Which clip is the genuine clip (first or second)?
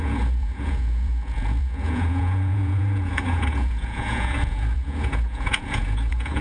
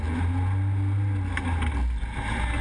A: second